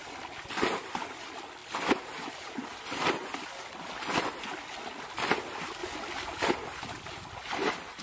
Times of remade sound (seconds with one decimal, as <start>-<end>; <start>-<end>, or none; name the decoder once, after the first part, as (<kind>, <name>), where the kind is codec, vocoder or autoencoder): none